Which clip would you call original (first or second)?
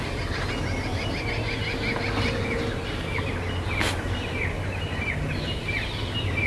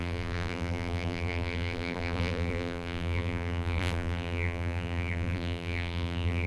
first